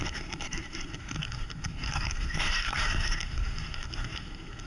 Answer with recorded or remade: remade